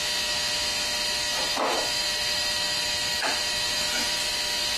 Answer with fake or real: fake